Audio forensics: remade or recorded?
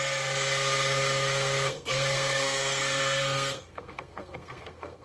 remade